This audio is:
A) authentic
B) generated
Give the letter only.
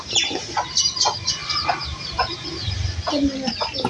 A